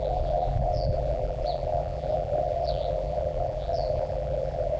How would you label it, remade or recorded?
remade